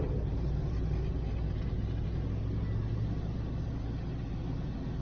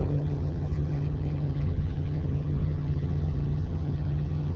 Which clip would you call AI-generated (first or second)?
second